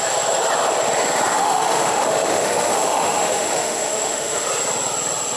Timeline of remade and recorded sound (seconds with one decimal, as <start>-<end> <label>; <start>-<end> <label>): 0.0-1.3 recorded; 1.3-4.5 remade; 4.5-5.4 recorded

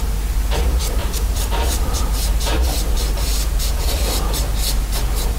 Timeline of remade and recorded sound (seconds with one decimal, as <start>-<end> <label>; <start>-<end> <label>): 0.0-1.0 recorded; 1.0-4.2 remade; 4.2-5.4 recorded

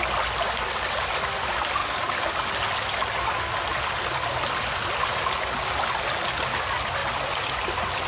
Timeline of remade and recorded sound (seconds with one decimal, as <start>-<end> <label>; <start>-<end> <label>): 0.0-7.0 recorded; 7.0-7.5 remade; 7.5-8.1 recorded

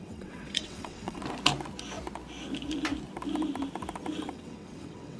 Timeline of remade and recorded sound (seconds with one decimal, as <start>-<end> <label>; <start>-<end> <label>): 0.0-1.2 remade; 1.2-4.3 recorded; 4.3-5.2 remade

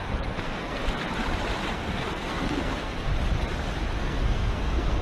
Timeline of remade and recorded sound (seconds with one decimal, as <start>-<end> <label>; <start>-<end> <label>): 0.0-0.8 remade; 0.8-1.7 recorded; 1.7-3.1 remade; 3.1-4.0 recorded; 4.0-5.0 remade

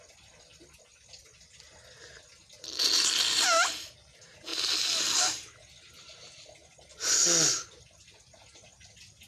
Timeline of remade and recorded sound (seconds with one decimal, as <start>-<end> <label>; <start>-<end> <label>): 0.0-9.3 recorded

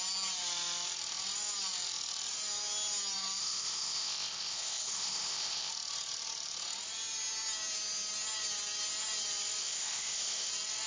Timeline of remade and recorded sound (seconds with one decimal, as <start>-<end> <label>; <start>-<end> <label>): 0.0-3.4 recorded; 3.4-5.7 remade; 5.7-9.6 recorded; 9.6-10.5 remade; 10.5-10.9 recorded